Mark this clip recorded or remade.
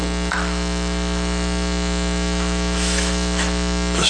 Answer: remade